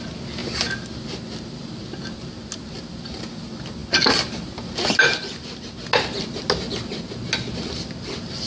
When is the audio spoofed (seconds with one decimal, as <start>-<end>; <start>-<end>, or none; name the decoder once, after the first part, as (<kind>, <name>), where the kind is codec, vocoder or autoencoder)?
none